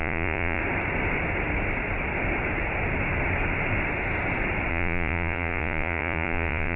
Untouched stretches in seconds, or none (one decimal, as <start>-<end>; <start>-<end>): 0.6-4.7